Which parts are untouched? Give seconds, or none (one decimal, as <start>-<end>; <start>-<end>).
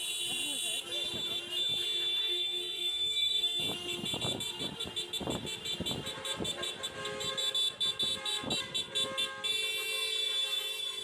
0.0-2.2; 3.6-11.0